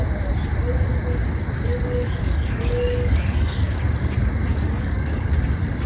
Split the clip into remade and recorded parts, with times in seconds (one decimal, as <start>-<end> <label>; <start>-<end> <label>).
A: 0.0-1.7 recorded; 1.7-3.8 remade; 3.8-4.5 recorded; 4.5-5.3 remade; 5.3-5.9 recorded